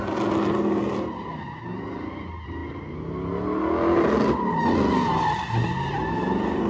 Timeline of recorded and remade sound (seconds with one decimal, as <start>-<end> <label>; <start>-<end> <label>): 0.0-6.7 recorded